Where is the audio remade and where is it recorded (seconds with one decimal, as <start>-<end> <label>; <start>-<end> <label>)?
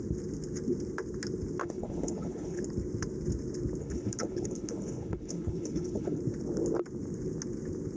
0.0-1.6 recorded; 1.6-2.6 remade; 2.6-3.8 recorded; 3.8-6.2 remade; 6.2-8.0 recorded